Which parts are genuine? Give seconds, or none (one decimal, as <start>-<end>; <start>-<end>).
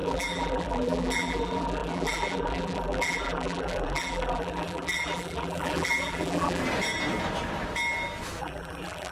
6.6-8.4